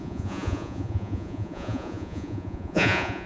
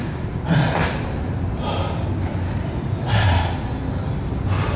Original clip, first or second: second